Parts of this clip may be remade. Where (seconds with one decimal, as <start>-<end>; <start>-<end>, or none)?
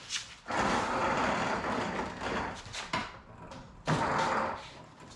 1.0-2.0